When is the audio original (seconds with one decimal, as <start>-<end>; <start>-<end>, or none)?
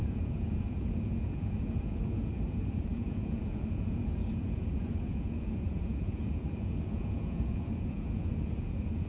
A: none